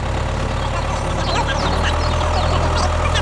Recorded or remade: recorded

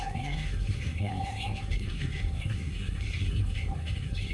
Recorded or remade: remade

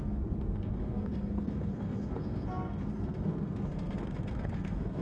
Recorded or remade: remade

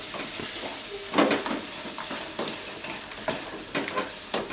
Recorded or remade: recorded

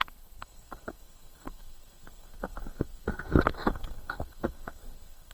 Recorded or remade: remade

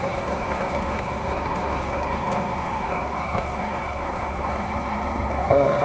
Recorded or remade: remade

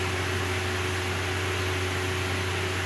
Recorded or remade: recorded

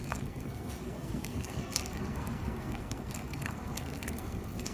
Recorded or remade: remade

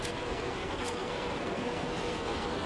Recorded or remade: remade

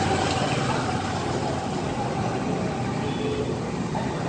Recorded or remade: recorded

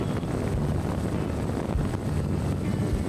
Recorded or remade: recorded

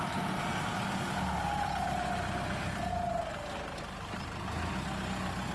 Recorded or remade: recorded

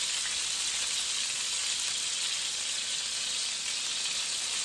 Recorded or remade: recorded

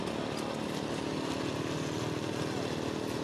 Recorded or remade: recorded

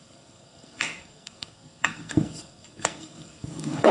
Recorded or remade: remade